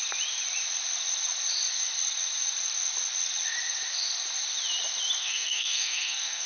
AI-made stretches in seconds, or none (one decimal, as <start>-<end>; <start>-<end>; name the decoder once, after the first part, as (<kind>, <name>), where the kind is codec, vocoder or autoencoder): 5.2-6.5 (codec, SNAC)